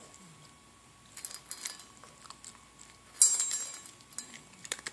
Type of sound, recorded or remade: recorded